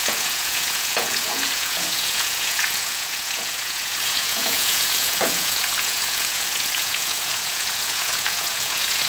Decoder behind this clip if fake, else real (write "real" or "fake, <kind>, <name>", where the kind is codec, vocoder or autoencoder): fake, vocoder, Vocos